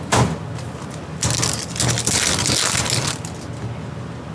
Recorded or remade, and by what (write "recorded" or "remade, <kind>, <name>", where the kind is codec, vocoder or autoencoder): recorded